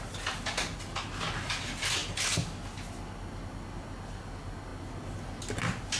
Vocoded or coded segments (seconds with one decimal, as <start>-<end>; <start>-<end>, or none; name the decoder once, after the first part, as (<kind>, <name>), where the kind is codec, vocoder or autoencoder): none

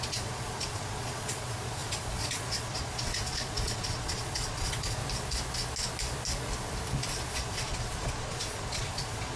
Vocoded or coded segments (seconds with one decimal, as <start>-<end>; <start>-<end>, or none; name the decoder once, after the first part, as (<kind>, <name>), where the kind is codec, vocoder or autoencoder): 0.0-5.0 (vocoder, Vocos); 7.3-9.4